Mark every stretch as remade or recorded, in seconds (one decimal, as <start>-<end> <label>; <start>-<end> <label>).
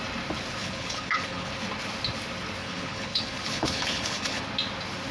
0.0-0.6 recorded; 0.6-1.5 remade; 1.5-2.6 recorded; 2.6-4.4 remade; 4.4-5.1 recorded